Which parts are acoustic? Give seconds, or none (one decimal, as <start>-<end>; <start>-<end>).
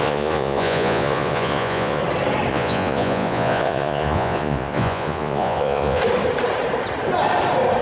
2.0-2.5; 6.0-7.8